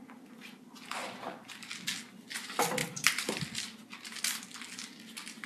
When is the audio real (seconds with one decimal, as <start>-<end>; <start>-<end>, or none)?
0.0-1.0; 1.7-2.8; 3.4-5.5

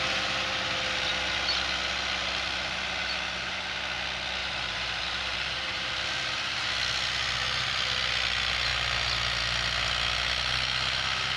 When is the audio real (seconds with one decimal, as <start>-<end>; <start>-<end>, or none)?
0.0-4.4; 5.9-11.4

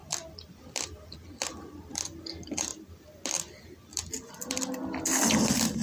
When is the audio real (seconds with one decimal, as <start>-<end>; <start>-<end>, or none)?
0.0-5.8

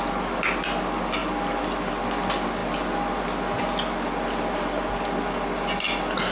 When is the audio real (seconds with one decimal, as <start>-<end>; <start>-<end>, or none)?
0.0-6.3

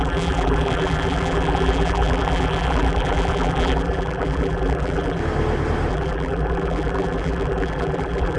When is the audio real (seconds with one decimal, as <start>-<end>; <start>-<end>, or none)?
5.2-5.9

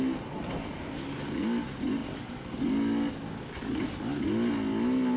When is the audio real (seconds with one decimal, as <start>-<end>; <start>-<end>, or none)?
0.0-5.2

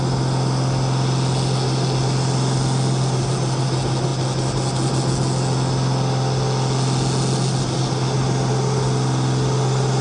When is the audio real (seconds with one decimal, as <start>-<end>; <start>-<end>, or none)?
0.0-10.0